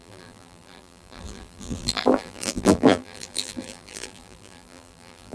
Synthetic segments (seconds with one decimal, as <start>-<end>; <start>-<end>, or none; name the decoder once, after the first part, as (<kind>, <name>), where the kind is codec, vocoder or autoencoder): 0.0-5.3 (vocoder, BigVGAN v2)